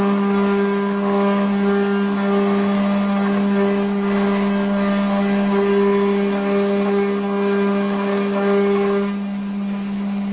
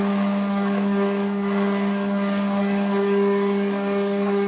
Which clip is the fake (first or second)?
second